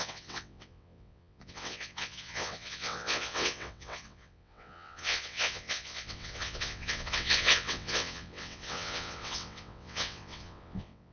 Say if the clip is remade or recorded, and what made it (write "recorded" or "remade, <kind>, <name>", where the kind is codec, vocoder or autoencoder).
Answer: remade, vocoder, WaveNeXt